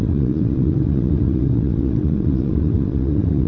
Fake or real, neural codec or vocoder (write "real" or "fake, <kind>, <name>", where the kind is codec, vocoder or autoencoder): fake, vocoder, WaveNeXt